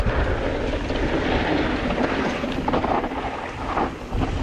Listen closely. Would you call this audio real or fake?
real